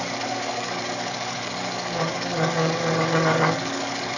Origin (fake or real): fake